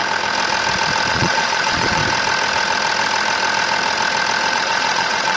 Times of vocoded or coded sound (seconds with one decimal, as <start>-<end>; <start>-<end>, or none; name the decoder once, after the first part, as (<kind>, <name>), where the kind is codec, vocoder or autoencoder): 1.1-2.0 (vocoder, Vocos); 4.5-5.4